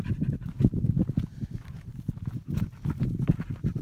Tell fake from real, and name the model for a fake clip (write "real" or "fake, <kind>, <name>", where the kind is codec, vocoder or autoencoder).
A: real